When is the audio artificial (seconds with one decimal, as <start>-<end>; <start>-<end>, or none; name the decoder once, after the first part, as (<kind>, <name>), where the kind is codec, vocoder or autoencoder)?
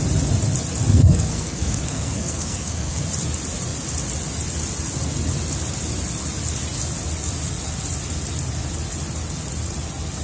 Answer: 0.9-3.0 (codec, SNAC)